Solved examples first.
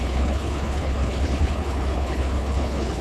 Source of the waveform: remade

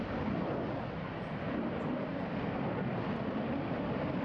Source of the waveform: recorded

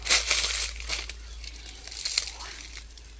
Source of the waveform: recorded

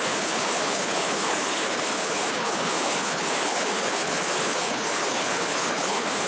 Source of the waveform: remade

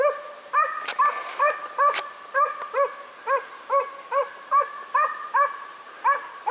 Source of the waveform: recorded